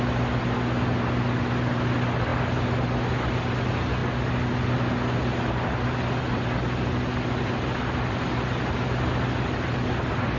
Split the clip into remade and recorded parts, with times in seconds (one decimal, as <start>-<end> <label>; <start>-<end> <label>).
0.0-10.4 recorded